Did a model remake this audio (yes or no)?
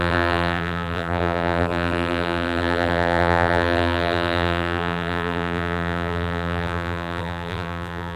yes